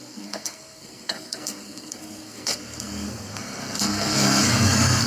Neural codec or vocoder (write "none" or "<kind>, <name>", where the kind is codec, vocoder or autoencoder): codec, SNAC